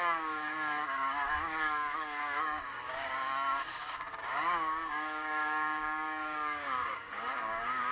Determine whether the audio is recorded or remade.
remade